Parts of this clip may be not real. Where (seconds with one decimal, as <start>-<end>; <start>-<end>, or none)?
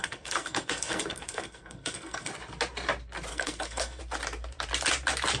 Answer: 0.0-2.3; 3.3-4.0